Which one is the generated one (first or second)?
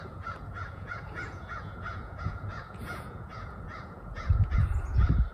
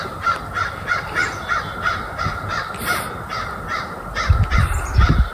first